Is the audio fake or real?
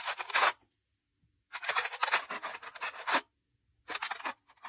real